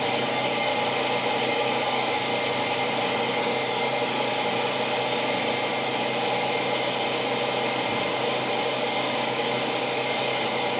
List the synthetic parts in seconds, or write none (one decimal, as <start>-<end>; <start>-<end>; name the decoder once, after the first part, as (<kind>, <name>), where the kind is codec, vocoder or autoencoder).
0.0-0.7 (codec, DAC); 1.4-2.3; 3.0-4.3; 8.1-10.8